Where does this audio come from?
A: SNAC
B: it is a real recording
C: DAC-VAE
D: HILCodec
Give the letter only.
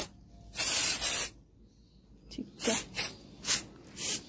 B